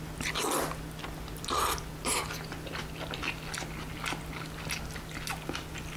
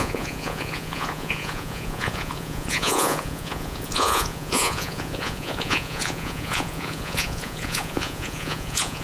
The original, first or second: first